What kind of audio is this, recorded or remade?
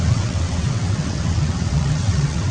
remade